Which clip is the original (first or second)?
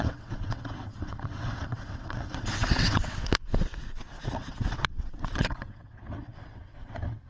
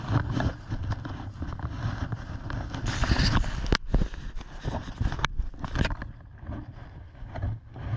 second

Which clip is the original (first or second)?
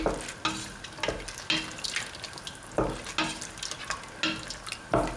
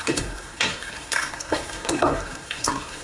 first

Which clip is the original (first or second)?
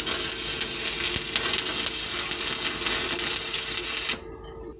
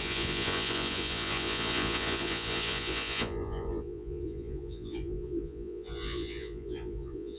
first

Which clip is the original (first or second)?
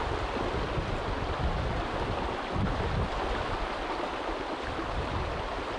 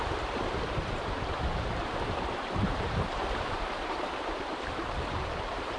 first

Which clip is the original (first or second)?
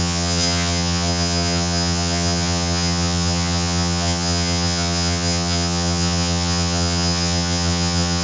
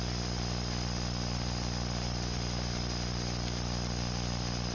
second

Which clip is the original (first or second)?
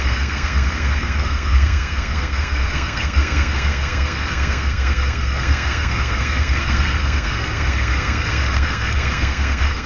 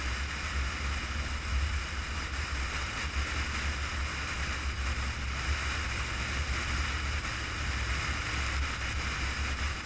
second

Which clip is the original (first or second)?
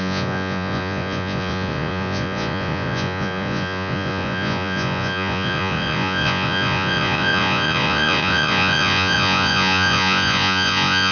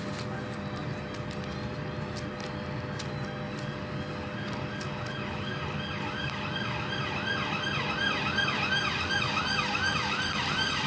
second